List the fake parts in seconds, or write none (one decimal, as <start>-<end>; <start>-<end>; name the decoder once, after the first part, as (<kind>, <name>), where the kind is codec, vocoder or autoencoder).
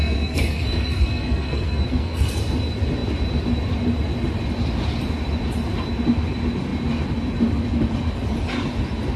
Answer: 0.0-2.4 (codec, SNAC)